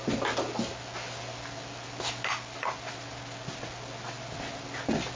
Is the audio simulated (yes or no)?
no